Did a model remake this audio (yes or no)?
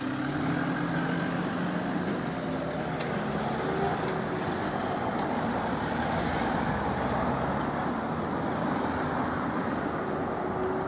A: no